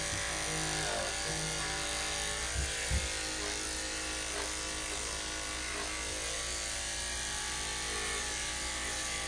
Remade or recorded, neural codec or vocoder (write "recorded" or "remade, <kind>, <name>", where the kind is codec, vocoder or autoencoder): recorded